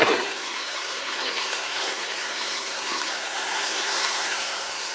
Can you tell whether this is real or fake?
fake